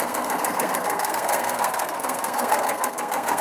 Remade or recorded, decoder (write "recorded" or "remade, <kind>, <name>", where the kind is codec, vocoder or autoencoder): remade, codec, SNAC